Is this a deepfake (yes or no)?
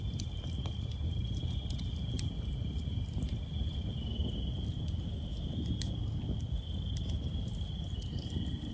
no